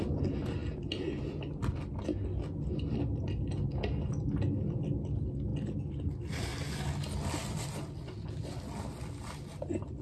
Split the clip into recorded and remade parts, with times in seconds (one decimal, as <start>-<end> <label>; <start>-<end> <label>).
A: 0.0-10.0 recorded